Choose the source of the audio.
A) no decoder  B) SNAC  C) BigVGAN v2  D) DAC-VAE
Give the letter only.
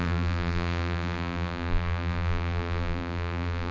C